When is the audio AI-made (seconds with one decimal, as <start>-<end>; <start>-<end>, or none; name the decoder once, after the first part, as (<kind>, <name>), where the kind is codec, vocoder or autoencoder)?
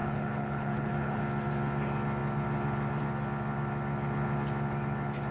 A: 0.0-1.2 (codec, HILCodec)